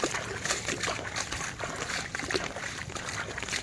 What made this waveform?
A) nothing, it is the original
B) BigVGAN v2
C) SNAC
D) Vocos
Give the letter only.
A